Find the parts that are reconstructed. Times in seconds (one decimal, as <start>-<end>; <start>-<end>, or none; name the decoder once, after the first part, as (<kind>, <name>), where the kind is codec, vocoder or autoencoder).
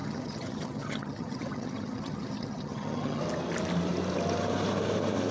0.0-3.2 (vocoder, HiFi-GAN)